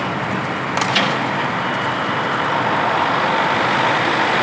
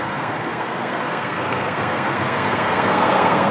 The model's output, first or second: second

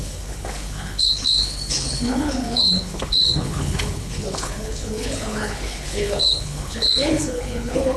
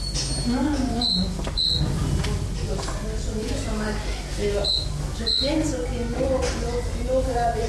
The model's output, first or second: first